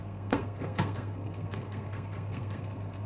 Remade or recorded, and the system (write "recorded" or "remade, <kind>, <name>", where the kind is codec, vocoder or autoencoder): remade, codec, SNAC